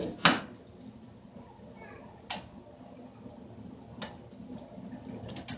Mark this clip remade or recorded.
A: recorded